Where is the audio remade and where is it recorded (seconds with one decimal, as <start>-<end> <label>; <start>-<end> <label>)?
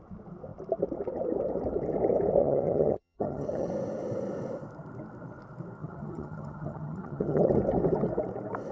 0.0-2.4 recorded; 2.4-3.7 remade; 3.7-5.8 recorded; 5.8-7.5 remade; 7.5-8.7 recorded